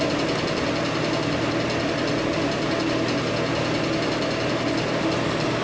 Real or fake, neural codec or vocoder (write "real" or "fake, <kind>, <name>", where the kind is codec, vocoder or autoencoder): real